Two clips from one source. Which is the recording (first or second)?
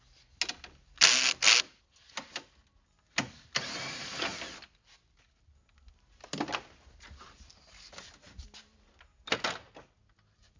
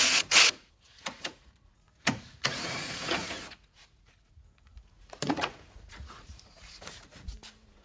first